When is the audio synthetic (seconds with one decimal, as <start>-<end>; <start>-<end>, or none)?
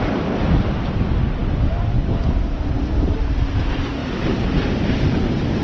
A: 0.0-5.6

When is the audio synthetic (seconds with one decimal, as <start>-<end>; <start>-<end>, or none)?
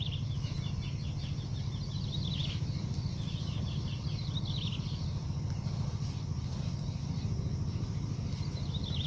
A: 2.4-6.7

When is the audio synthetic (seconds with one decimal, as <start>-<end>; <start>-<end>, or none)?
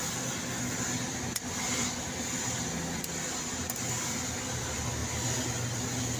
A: none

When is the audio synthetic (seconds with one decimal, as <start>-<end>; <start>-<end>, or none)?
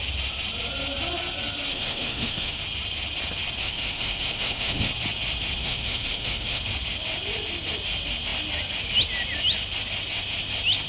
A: 1.7-2.6; 3.6-4.9; 5.6-6.6